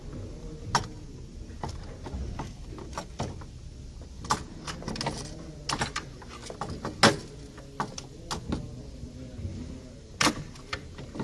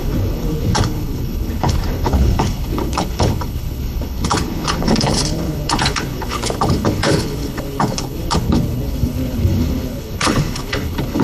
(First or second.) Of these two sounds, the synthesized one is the second